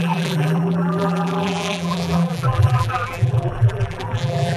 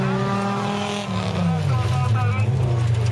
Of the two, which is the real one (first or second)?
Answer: second